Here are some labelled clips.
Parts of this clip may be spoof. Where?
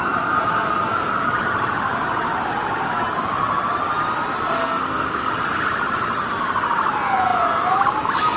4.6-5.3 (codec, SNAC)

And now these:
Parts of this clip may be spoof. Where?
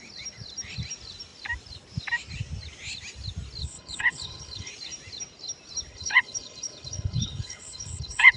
3.6-4.7 (codec, HILCodec); 5.9-8.4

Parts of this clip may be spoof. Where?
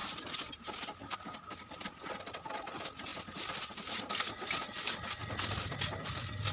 none